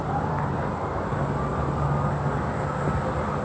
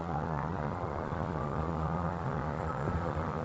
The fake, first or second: second